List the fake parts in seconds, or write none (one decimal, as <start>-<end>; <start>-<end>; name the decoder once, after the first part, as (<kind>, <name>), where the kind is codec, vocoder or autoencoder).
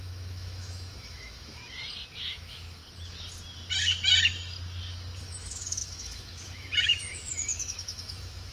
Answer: 0.0-1.6 (autoencoder, DAC-VAE); 2.2-2.8; 5.2-8.5